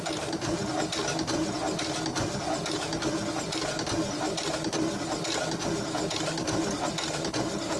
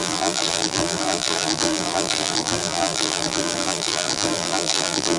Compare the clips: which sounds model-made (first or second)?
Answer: second